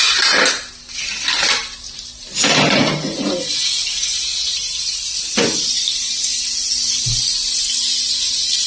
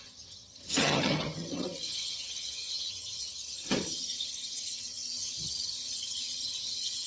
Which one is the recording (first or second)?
first